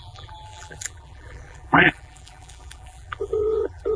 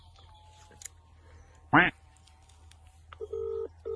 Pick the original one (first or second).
second